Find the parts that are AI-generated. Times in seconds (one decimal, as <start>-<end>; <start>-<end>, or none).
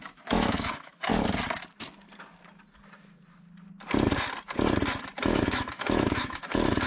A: 0.0-1.1; 5.2-6.9